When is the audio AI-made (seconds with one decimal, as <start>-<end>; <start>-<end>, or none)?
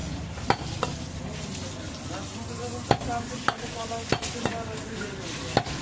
none